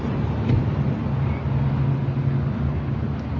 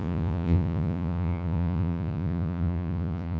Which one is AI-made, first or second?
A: second